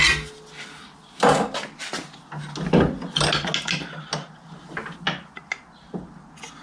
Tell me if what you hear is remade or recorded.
recorded